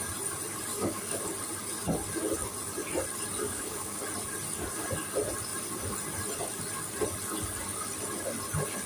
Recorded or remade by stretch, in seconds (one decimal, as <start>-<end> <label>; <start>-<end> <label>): 0.0-0.7 recorded; 0.7-1.2 remade; 1.2-3.4 recorded; 3.4-4.0 remade; 4.0-8.9 recorded